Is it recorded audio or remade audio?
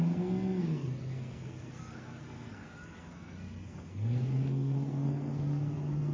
remade